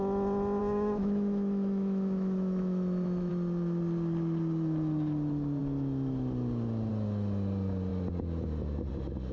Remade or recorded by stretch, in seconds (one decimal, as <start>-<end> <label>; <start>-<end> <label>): 0.0-0.6 recorded; 0.6-3.3 remade; 3.3-9.3 recorded